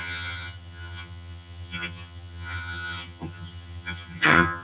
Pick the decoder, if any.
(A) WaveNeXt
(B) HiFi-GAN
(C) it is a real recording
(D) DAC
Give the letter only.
B